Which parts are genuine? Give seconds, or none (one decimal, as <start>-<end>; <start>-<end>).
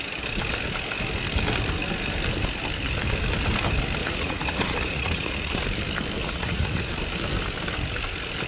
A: 0.0-4.0; 5.6-6.2; 6.9-8.5